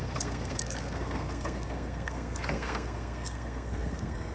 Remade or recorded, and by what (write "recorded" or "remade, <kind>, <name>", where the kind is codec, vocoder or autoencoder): remade, codec, SNAC